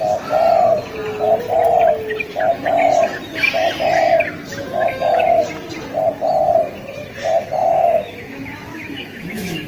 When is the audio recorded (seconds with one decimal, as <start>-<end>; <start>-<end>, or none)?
0.0-4.5; 5.5-7.6